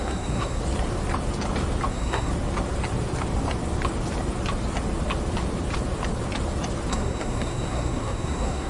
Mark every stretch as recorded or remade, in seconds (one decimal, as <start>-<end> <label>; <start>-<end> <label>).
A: 0.0-0.6 remade; 0.6-1.9 recorded; 1.9-2.3 remade; 2.3-6.9 recorded; 6.9-8.7 remade